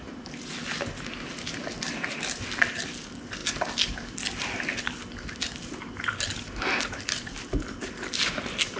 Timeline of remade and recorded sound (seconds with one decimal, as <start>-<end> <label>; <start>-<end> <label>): 0.0-8.8 recorded